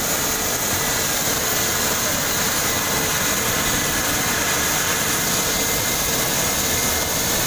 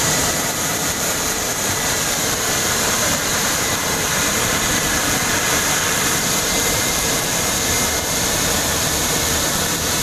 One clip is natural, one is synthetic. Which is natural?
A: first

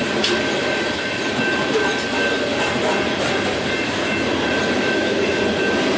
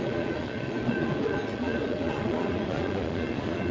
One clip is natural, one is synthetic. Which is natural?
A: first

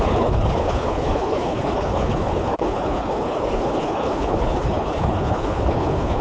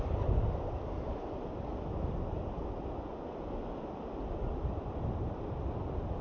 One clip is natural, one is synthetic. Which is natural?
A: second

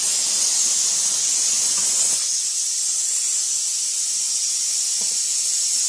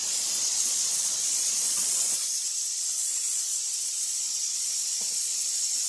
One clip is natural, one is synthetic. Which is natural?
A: first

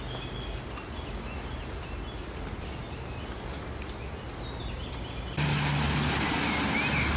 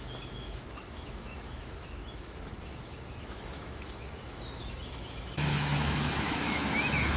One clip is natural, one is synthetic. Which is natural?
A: first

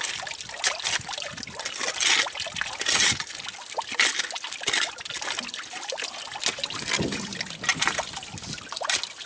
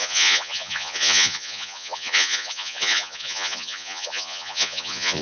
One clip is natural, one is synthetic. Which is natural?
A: first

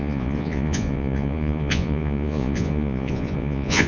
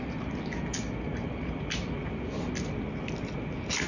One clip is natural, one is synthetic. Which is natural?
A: second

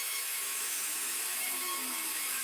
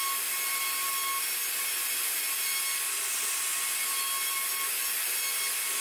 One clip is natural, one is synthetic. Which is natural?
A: second